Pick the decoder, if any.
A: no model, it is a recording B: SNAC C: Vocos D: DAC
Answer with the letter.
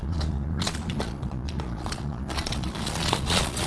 C